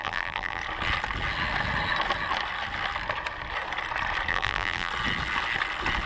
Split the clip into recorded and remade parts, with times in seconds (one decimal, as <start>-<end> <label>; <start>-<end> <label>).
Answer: 0.0-0.6 remade; 0.6-4.3 recorded; 4.3-4.9 remade; 4.9-6.1 recorded